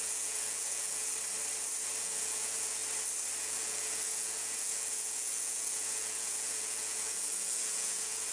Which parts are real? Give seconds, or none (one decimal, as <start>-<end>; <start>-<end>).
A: 1.1-2.0; 2.8-3.4